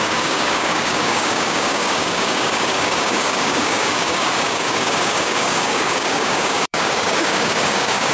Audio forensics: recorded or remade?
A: remade